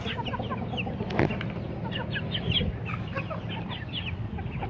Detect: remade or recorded recorded